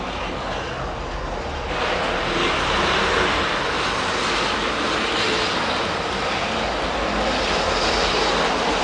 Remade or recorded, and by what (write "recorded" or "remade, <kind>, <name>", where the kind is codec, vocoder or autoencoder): recorded